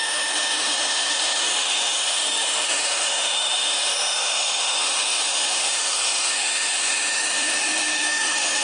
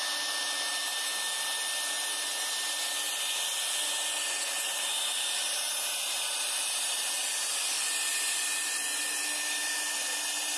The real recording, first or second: second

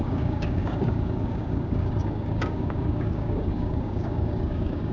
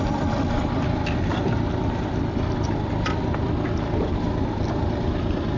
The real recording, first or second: second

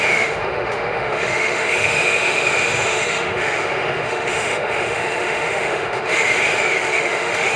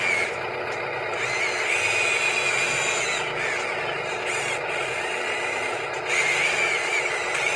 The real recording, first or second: second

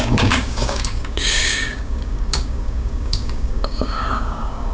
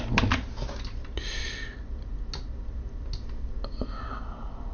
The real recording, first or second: second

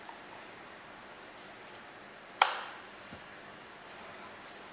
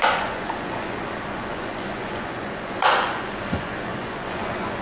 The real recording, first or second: first